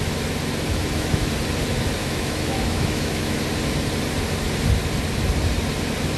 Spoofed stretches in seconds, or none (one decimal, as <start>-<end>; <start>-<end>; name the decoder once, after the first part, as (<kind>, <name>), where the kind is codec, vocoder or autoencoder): 0.7-1.3 (autoencoder, DAC-VAE); 2.0-3.4